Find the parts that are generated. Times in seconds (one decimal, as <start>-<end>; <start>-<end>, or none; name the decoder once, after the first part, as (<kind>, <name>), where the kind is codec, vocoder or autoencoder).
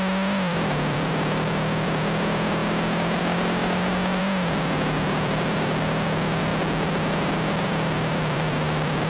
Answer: 0.0-2.6 (vocoder, BigVGAN v2); 3.2-6.5; 7.6-9.1